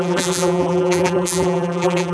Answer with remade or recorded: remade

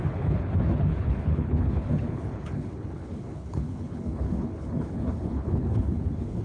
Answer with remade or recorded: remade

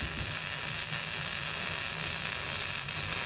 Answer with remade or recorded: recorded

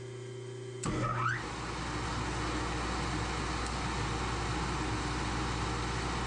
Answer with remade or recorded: recorded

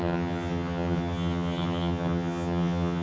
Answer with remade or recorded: remade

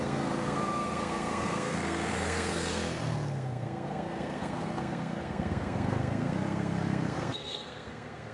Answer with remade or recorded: remade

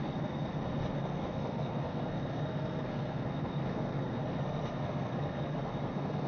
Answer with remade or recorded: remade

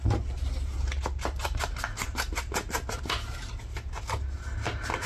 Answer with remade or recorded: recorded